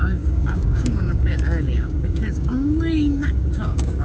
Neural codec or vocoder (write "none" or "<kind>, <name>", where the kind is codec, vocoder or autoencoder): codec, DAC